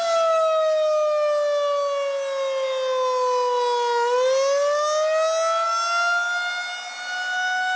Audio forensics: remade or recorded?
recorded